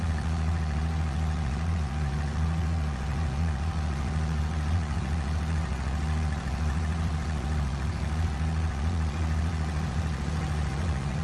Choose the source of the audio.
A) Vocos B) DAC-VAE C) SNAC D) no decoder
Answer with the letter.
A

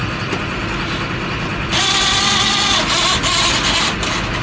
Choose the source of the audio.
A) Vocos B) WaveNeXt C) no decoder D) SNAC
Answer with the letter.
C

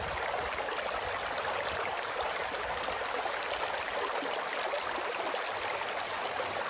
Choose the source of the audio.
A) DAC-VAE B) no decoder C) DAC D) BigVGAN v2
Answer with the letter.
B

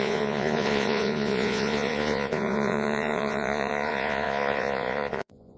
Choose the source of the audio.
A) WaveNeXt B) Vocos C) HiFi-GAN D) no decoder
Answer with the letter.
B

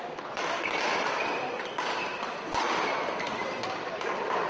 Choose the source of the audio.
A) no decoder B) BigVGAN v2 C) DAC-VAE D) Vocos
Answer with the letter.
A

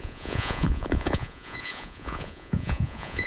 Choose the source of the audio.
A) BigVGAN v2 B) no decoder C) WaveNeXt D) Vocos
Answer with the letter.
D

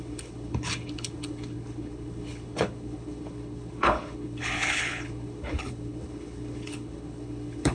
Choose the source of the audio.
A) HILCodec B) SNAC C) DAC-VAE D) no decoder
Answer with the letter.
A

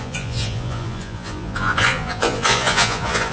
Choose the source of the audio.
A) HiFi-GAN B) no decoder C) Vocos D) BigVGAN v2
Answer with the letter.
C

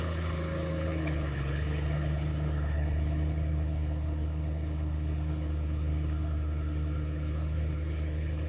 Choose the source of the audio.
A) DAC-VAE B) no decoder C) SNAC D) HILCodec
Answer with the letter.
D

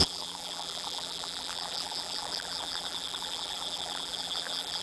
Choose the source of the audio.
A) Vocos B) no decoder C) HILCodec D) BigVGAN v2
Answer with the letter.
D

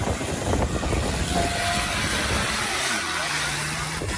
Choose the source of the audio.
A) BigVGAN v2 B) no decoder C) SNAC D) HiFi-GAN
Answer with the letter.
B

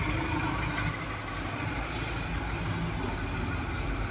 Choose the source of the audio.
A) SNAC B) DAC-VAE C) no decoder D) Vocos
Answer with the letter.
C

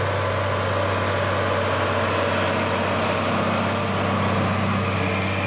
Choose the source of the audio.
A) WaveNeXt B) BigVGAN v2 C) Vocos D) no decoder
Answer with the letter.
D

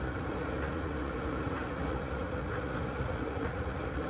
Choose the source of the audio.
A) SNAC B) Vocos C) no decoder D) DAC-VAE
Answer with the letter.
B